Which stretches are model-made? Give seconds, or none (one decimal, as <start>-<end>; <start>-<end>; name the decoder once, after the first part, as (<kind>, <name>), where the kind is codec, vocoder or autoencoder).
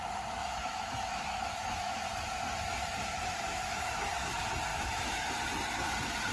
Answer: 0.4-2.1 (autoencoder, DAC-VAE); 2.7-3.9; 4.7-5.3